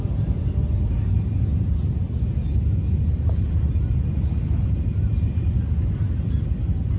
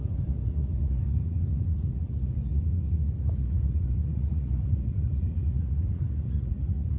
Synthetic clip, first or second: second